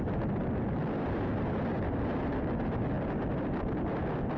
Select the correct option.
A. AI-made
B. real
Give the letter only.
B